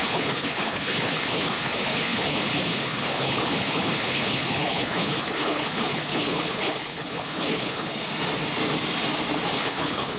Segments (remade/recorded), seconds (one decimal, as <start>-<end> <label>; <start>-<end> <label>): 0.0-7.9 remade; 7.9-9.5 recorded; 9.5-10.2 remade

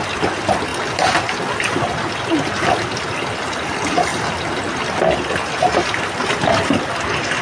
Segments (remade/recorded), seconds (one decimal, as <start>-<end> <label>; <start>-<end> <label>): 0.0-7.4 recorded

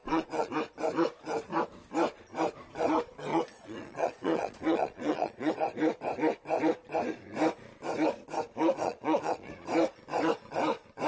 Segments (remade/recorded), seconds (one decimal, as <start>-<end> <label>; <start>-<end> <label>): 0.0-0.5 remade; 0.5-3.3 recorded; 3.3-5.5 remade; 5.5-8.8 recorded; 8.8-9.5 remade; 9.5-11.1 recorded

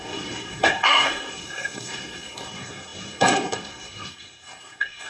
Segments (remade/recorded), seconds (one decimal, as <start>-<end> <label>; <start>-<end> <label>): 0.0-5.1 remade

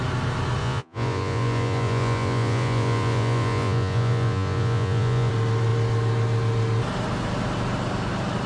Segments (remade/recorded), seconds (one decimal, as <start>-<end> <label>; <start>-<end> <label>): 0.0-0.6 recorded; 0.6-5.3 remade; 5.3-8.5 recorded

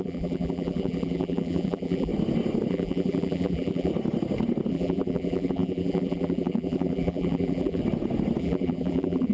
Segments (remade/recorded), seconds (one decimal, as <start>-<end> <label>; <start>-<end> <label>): 0.0-2.1 remade; 2.1-2.7 recorded; 2.7-3.9 remade; 3.9-4.7 recorded; 4.7-7.8 remade; 7.8-8.4 recorded; 8.4-9.3 remade

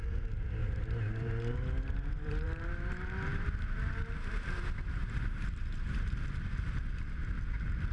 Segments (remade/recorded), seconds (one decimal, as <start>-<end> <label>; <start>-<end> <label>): 0.0-0.6 recorded; 0.6-4.2 remade; 4.2-5.0 recorded; 5.0-6.1 remade; 6.1-7.9 recorded